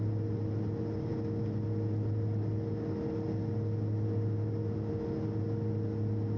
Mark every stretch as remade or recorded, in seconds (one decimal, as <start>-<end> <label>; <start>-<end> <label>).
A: 0.0-6.4 recorded